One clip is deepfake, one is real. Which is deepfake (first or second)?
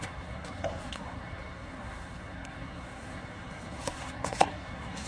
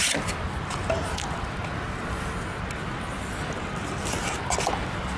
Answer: first